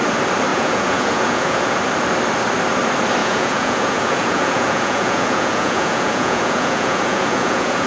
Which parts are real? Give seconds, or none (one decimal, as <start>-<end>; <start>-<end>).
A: 0.0-0.5; 1.8-3.2